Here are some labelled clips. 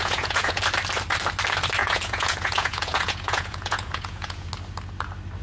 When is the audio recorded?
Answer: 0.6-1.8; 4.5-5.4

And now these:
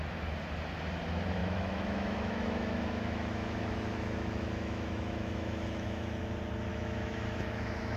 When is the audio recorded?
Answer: 0.0-1.4; 6.2-6.7